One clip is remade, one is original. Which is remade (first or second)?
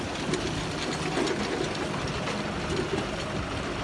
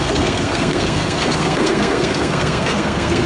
second